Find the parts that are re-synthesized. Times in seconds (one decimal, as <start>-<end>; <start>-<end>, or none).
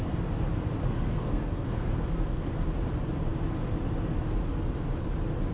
0.8-2.5